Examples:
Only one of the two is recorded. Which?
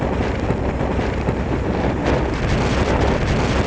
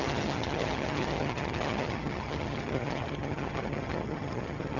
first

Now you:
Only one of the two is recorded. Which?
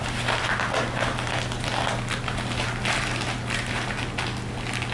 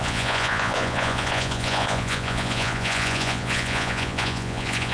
first